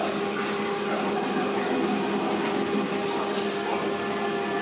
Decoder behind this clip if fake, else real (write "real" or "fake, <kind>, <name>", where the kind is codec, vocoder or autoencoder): real